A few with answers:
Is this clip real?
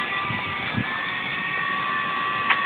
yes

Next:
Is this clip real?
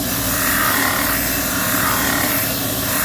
yes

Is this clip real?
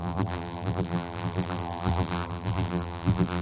no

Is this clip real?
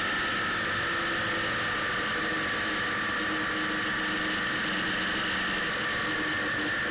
yes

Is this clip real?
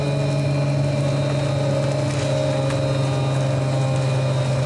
yes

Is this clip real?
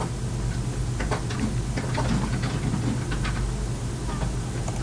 yes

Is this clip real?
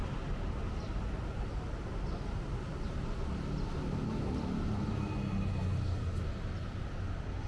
yes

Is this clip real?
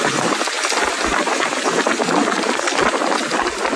yes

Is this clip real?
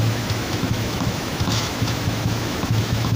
no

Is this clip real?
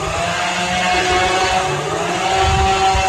yes